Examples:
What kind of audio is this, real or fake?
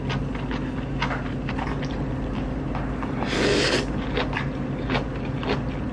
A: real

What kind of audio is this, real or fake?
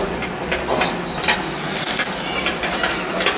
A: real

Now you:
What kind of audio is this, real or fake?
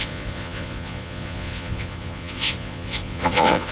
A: fake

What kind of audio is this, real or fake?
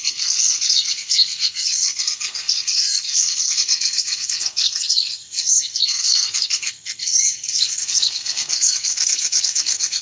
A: fake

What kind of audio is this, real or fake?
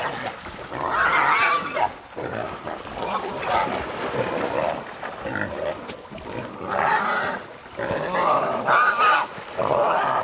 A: real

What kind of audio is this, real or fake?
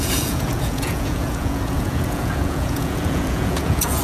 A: fake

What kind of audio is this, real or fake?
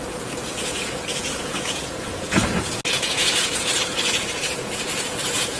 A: fake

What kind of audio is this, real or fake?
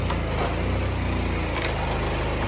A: real